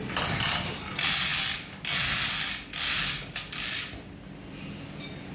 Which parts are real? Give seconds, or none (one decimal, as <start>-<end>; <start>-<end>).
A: 1.3-2.3